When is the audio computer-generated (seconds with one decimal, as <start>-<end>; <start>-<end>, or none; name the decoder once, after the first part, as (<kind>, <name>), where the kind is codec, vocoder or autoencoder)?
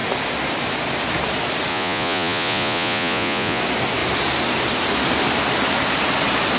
1.7-3.6 (vocoder, Vocos)